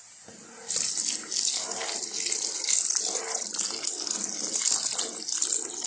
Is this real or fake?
real